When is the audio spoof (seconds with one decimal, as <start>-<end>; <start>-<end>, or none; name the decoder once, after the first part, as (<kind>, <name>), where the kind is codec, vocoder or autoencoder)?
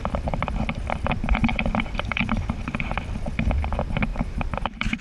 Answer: 1.4-2.9 (vocoder, BigVGAN v2); 4.1-5.0